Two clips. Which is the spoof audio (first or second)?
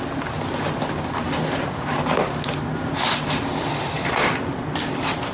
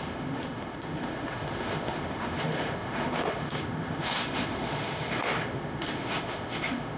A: second